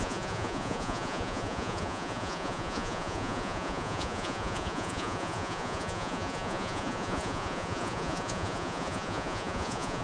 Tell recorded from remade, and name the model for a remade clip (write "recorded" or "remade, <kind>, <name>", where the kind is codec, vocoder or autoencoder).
remade, vocoder, Vocos